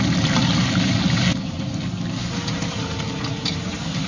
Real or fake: real